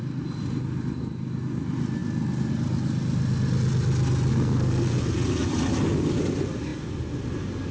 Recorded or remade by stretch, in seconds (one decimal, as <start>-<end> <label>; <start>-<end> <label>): 0.0-4.3 recorded; 4.3-4.9 remade; 4.9-7.7 recorded